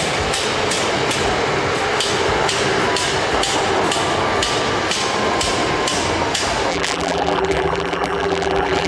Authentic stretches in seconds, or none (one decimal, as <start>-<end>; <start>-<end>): 0.0-6.7